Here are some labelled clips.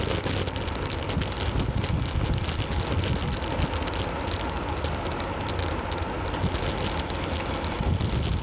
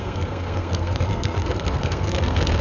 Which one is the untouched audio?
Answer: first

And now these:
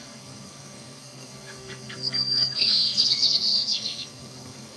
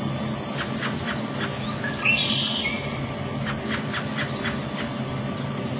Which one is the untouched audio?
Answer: second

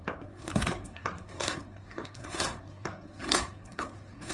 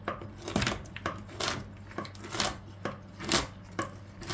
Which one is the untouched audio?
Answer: second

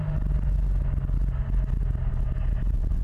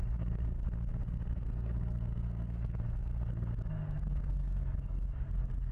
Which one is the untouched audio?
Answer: first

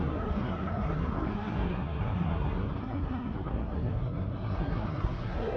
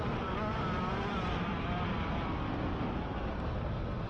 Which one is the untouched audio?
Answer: second